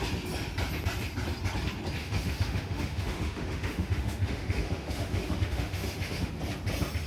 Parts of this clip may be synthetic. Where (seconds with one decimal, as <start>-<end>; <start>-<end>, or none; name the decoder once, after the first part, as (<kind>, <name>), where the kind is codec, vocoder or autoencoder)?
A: 2.0-6.3 (autoencoder, DAC-VAE)